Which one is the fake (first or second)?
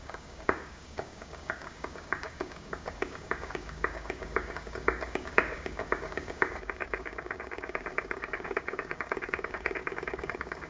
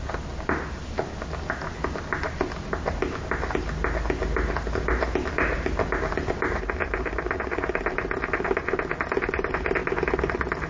first